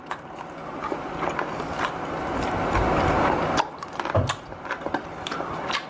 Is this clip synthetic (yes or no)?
no